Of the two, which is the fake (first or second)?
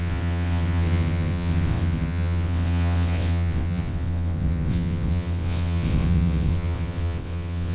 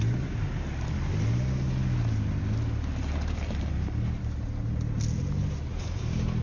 first